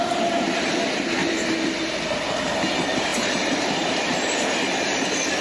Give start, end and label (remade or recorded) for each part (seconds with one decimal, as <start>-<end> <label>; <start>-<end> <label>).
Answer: 0.0-3.1 recorded; 3.1-4.6 remade; 4.6-5.4 recorded